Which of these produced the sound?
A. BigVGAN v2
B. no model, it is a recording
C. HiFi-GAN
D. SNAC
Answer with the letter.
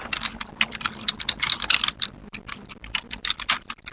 B